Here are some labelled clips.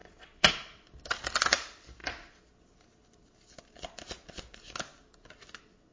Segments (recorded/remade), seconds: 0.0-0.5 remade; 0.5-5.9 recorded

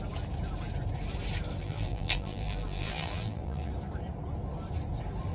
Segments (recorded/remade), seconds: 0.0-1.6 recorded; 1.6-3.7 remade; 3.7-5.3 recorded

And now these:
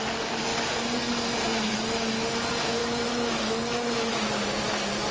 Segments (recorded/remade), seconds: 0.0-2.8 recorded; 2.8-4.3 remade; 4.3-5.1 recorded

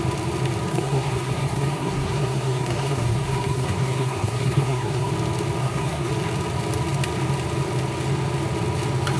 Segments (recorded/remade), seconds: 0.0-0.7 recorded; 0.7-5.1 remade; 5.1-5.6 recorded; 5.6-6.1 remade; 6.1-9.2 recorded

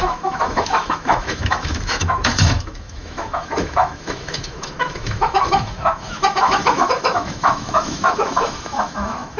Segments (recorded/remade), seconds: 0.0-9.4 remade